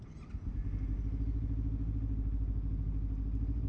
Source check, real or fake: real